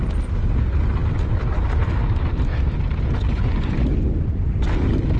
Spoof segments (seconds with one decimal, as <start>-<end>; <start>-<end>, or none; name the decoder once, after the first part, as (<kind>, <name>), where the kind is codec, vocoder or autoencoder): none